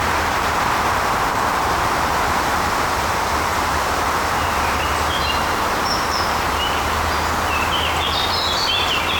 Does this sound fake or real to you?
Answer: fake